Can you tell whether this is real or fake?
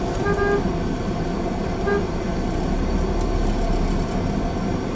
real